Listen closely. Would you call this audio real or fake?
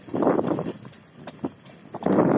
real